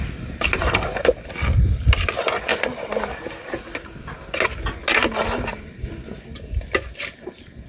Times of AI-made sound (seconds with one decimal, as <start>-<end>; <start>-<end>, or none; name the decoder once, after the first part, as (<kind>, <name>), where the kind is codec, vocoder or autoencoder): none